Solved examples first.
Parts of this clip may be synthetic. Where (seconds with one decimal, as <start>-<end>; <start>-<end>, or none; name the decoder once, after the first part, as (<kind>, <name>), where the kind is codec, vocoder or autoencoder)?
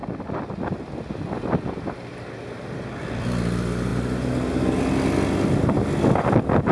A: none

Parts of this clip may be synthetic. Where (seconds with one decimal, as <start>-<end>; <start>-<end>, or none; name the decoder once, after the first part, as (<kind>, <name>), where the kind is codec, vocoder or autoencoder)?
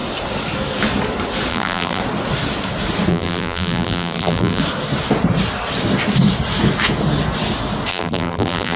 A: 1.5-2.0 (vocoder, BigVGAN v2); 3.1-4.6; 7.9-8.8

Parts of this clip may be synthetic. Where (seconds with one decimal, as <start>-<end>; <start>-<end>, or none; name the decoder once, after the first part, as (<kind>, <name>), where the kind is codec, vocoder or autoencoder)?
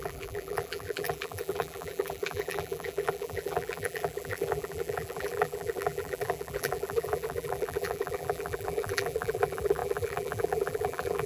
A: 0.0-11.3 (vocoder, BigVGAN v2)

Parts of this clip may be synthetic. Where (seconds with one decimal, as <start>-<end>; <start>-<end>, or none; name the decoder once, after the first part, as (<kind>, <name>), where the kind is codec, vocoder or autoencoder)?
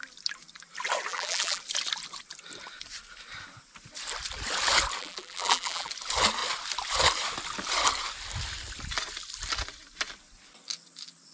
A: 1.1-1.6 (vocoder, BigVGAN v2); 5.0-5.9